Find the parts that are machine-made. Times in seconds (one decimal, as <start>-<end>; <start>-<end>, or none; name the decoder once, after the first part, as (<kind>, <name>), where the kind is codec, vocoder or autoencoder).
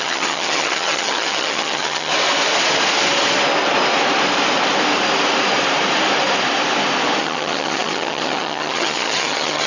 0.0-2.1 (vocoder, HiFi-GAN); 7.2-9.7